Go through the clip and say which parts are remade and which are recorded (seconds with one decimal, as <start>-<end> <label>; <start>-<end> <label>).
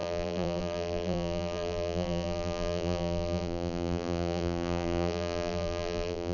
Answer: 0.0-6.3 remade